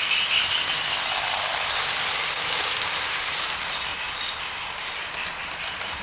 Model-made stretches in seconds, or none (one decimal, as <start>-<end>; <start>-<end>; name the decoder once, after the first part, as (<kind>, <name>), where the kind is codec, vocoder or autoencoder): none